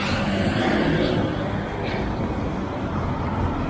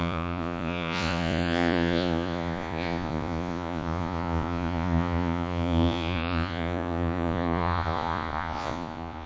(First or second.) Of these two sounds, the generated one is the second